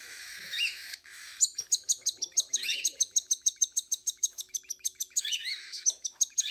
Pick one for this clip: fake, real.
fake